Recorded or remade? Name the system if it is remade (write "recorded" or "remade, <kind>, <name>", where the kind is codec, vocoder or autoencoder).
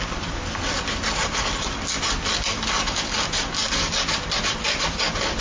recorded